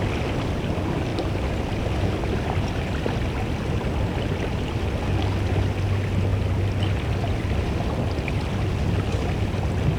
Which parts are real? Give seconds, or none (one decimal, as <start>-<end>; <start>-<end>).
0.0-10.0